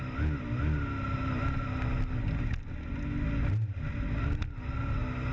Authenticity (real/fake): real